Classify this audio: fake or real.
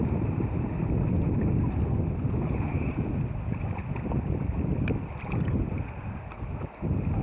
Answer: real